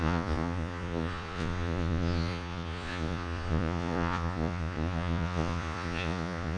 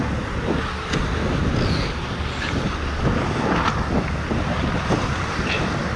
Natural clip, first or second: second